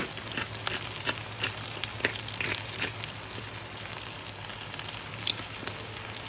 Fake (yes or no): no